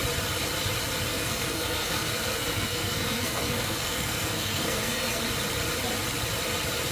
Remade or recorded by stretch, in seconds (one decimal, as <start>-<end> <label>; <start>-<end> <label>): 0.0-1.1 recorded; 1.1-5.2 remade; 5.2-6.9 recorded